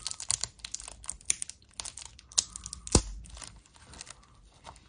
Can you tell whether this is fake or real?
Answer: real